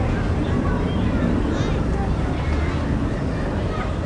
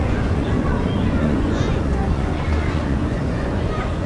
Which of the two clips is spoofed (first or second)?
second